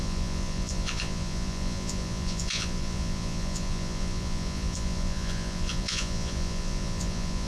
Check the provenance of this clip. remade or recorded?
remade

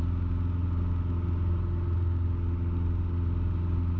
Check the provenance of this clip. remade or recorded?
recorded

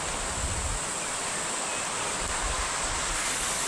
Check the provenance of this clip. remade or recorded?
recorded